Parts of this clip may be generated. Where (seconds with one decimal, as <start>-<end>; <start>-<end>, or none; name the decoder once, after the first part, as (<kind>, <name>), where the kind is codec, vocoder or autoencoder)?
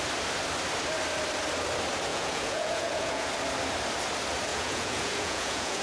2.1-3.3 (vocoder, Vocos); 4.5-5.8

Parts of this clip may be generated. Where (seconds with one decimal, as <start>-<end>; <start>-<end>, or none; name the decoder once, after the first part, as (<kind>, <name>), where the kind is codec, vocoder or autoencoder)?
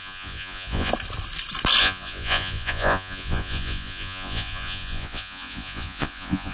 0.0-0.9 (vocoder, Vocos); 1.8-6.5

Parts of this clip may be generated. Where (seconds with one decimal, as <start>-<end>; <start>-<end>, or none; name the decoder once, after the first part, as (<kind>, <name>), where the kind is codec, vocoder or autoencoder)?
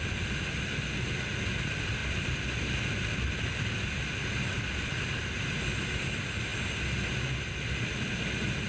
none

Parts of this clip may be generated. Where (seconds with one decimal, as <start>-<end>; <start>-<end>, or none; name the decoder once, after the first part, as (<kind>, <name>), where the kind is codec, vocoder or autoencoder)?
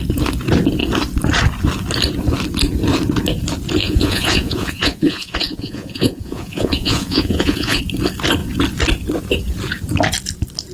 3.8-7.8 (vocoder, Vocos)